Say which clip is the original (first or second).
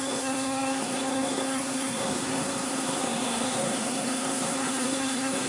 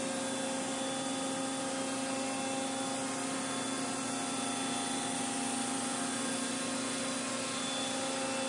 second